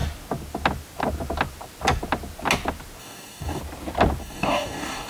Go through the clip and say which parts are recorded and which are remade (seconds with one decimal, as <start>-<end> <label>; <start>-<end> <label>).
0.0-3.0 recorded; 3.0-3.6 remade; 3.6-4.2 recorded; 4.2-5.1 remade